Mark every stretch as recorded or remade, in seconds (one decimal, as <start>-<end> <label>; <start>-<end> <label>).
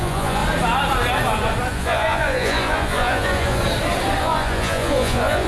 0.0-0.4 remade; 0.4-1.7 recorded; 1.7-3.6 remade; 3.6-4.2 recorded; 4.2-5.5 remade